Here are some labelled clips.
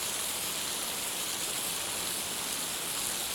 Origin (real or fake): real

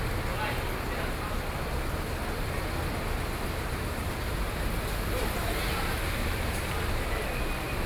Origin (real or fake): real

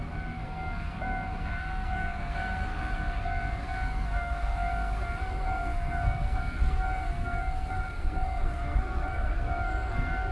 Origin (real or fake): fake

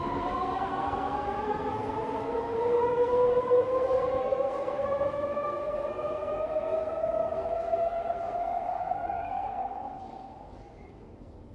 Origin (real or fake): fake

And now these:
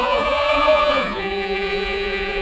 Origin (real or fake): fake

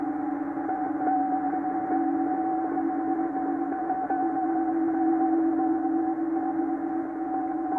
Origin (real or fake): real